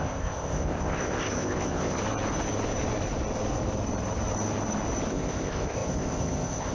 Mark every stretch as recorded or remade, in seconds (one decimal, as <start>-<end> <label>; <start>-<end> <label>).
0.0-2.0 remade; 2.0-5.1 recorded; 5.1-6.7 remade